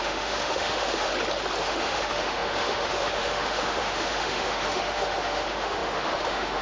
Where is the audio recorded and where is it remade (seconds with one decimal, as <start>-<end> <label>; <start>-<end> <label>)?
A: 0.0-1.1 remade; 1.1-1.6 recorded; 1.6-6.6 remade